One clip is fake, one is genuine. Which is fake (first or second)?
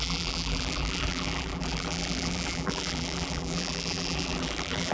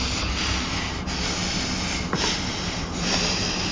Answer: first